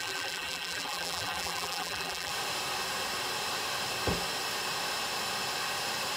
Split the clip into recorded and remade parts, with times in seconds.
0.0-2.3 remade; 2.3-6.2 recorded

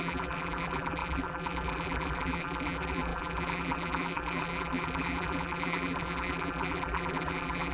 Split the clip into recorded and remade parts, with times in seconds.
0.0-7.7 remade